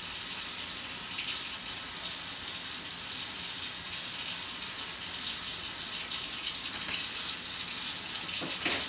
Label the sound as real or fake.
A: real